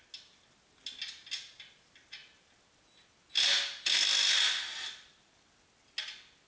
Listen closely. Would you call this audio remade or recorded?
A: recorded